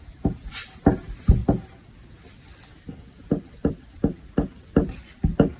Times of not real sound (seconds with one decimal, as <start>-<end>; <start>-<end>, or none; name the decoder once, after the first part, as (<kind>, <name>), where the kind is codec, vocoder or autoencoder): 1.4-4.2 (vocoder, BigVGAN v2)